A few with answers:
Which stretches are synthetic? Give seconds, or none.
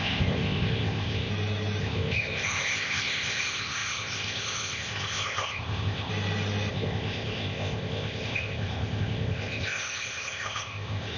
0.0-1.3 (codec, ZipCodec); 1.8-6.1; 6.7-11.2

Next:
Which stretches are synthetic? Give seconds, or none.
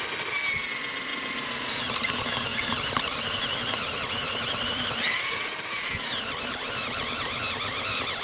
2.5-7.4 (vocoder, BigVGAN v2)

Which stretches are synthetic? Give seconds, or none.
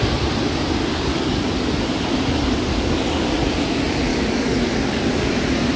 0.9-1.4 (codec, DAC); 2.7-3.3; 4.1-5.3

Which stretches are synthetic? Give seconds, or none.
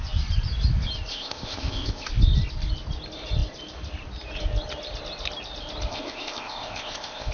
1.1-2.1 (codec, ZipCodec); 5.9-7.3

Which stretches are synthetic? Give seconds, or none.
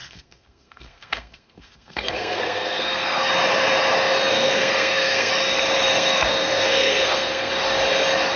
0.0-3.3 (codec, SNAC); 4.3-5.3; 5.9-7.5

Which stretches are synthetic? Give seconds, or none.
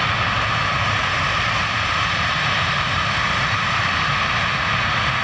0.7-3.8 (vocoder, BigVGAN v2)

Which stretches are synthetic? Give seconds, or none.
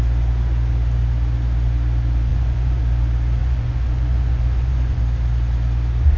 2.3-2.8 (vocoder, Vocos); 3.4-5.0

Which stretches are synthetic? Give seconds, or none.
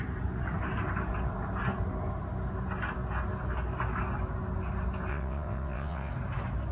5.1-6.1 (vocoder, WaveNeXt)